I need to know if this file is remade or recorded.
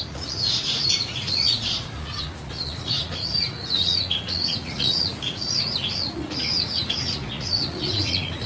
remade